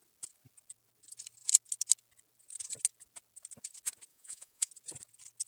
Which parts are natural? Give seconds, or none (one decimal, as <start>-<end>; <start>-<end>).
0.0-4.1; 4.7-5.5